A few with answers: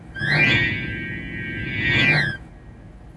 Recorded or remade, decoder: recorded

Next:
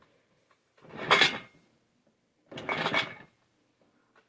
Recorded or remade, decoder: recorded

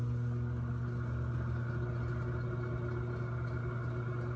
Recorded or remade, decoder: recorded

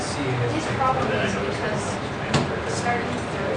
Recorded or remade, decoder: recorded